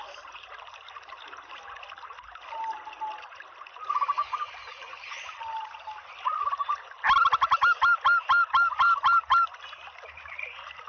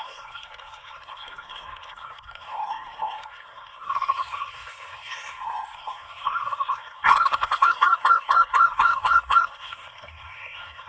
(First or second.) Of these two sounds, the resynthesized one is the second